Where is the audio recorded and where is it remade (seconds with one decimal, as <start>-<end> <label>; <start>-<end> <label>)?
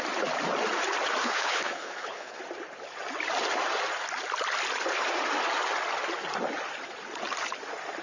0.0-1.2 recorded; 1.2-2.4 remade; 2.4-8.0 recorded